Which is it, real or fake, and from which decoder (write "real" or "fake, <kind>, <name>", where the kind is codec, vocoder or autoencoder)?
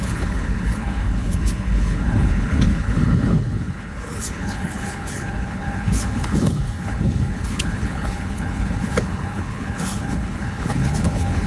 fake, codec, HILCodec